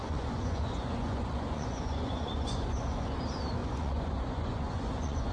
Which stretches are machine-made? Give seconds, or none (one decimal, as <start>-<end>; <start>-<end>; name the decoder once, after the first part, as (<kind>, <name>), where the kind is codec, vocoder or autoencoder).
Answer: 0.0-3.2 (vocoder, Vocos); 3.6-5.3